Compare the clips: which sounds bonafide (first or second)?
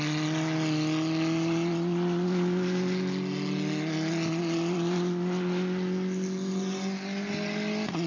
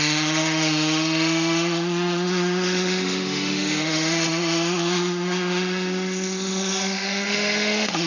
first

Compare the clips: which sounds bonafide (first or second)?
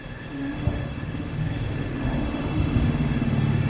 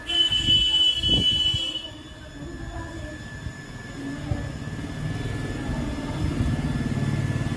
second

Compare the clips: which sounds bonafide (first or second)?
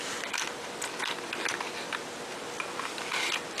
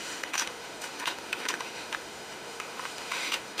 first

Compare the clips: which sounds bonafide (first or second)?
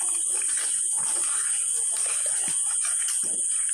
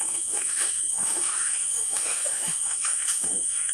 first